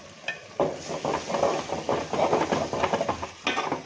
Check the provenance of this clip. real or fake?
real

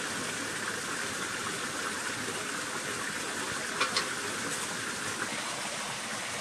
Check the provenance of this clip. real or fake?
real